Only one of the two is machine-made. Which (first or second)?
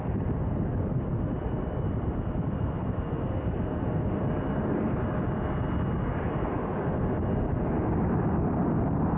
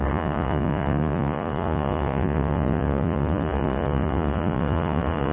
second